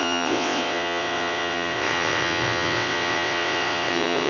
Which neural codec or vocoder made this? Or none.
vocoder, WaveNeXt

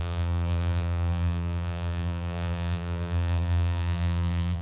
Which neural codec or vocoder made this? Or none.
vocoder, BigVGAN v2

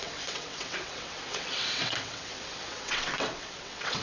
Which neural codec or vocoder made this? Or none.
vocoder, WaveNeXt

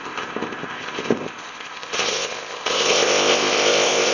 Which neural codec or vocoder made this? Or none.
codec, ZipCodec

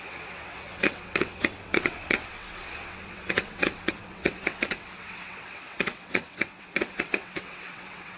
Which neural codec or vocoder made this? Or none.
vocoder, WaveNeXt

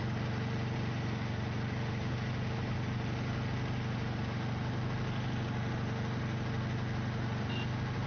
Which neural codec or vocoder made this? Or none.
none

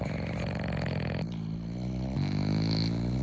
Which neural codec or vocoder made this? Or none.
none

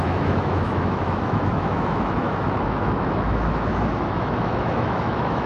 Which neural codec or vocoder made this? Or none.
autoencoder, DAC-VAE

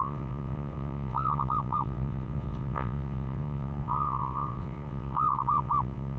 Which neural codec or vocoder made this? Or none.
vocoder, WaveNeXt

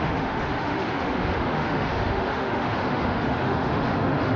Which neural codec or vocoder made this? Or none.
autoencoder, DAC-VAE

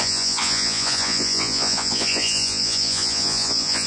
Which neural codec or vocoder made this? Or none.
vocoder, Vocos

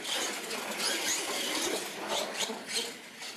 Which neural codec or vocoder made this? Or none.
none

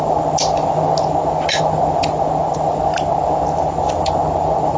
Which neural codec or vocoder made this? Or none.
none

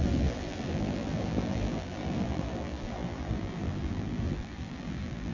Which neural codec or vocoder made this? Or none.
vocoder, BigVGAN v2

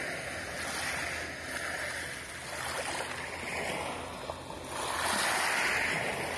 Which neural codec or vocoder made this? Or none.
none